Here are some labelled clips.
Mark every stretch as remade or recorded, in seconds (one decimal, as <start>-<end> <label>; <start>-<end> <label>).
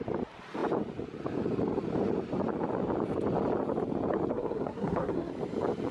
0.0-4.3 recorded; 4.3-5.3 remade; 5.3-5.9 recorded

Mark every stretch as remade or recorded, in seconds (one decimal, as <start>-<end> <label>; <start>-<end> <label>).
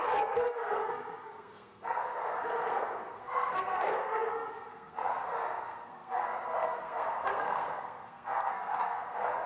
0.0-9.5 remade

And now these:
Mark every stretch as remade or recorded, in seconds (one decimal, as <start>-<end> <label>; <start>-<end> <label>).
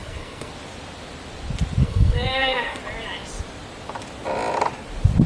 0.0-0.5 remade; 0.5-1.8 recorded; 1.8-2.8 remade; 2.8-5.3 recorded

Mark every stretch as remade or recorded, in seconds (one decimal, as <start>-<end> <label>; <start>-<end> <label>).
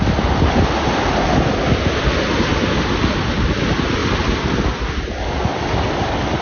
0.0-6.4 recorded